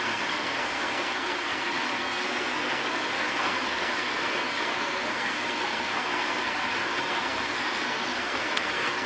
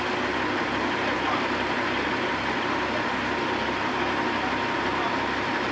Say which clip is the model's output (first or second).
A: first